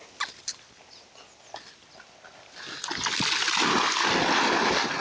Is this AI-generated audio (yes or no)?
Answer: no